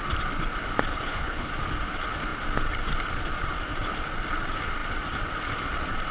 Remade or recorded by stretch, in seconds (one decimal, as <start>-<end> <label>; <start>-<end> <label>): 0.0-0.9 recorded; 0.9-1.5 remade; 1.5-6.1 recorded